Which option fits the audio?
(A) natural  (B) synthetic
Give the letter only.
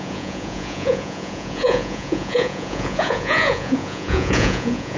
B